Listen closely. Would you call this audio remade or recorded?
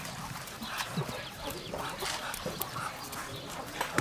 recorded